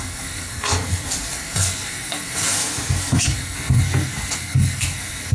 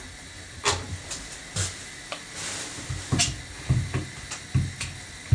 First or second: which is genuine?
second